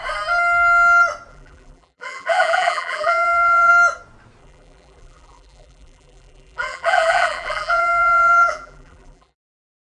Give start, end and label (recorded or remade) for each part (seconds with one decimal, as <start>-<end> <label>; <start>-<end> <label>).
0.0-1.3 recorded; 1.3-3.7 remade; 3.7-4.4 recorded; 4.4-9.5 remade; 9.5-9.9 recorded